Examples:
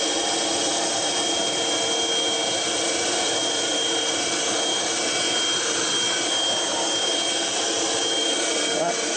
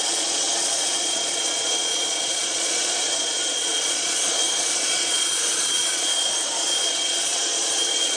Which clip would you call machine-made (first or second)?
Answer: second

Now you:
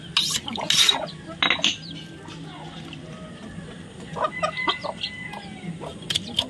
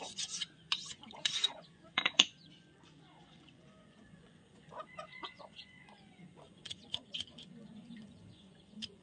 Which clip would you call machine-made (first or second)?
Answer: second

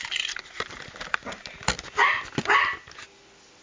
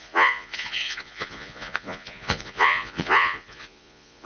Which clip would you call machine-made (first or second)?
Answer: second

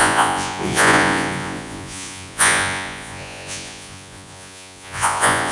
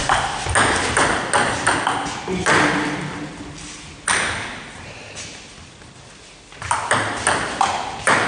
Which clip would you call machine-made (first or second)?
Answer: first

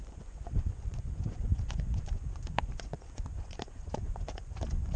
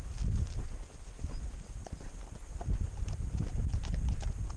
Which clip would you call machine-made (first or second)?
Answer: first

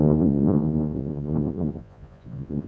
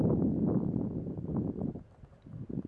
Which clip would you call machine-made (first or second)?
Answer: first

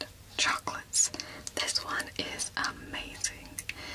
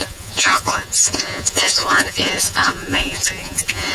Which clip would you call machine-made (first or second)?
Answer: second